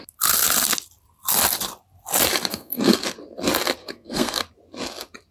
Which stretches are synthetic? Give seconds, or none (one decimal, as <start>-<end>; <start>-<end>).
2.5-3.0; 3.8-4.4